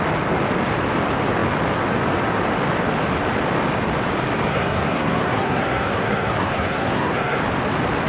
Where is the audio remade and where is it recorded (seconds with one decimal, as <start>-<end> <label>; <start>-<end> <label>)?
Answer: 0.0-4.5 recorded; 4.5-7.4 remade; 7.4-8.1 recorded